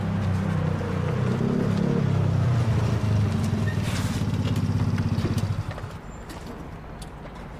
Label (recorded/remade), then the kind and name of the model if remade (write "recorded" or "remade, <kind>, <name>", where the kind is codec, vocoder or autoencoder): recorded